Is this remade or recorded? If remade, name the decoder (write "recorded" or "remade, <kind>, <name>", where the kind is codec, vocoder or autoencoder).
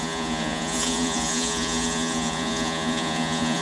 remade, vocoder, Vocos